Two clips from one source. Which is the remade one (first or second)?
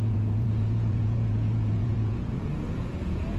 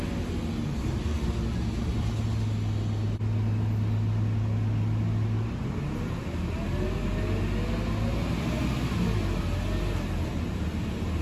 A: first